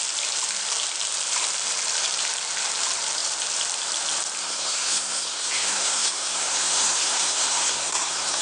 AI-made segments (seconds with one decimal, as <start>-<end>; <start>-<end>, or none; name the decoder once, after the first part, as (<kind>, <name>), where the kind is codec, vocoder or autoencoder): 4.4-8.4 (codec, SNAC)